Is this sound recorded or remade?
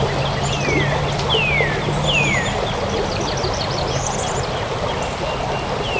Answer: recorded